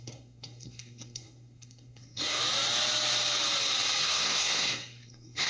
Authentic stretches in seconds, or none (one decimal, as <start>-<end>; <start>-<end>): 2.4-4.0